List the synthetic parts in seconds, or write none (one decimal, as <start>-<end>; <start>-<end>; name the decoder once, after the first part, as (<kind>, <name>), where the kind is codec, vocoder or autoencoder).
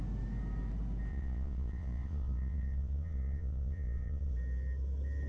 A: 1.1-4.3 (vocoder, Vocos)